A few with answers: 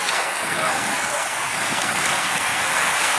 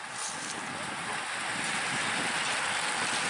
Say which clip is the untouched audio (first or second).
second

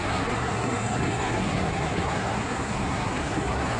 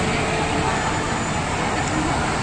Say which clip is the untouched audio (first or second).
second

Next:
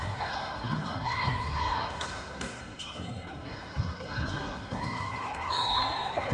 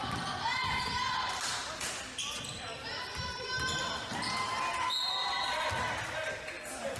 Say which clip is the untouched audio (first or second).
second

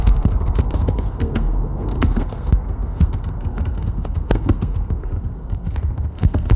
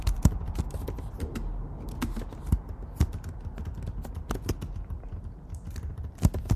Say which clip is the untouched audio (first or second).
second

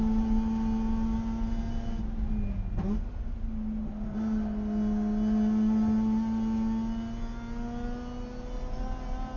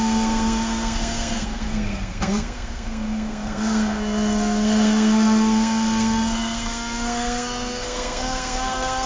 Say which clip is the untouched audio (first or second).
first